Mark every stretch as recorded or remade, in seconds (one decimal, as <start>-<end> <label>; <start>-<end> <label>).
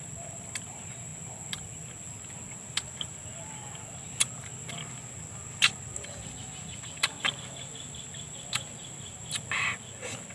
0.0-10.3 recorded